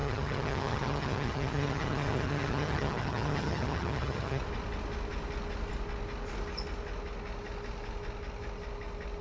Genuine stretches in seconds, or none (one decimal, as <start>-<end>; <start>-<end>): 4.4-9.2